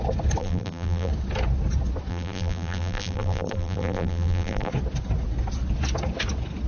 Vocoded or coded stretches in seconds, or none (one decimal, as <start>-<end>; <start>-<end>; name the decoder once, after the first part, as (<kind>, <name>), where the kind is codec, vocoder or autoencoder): 0.4-1.1 (vocoder, BigVGAN v2); 2.1-4.7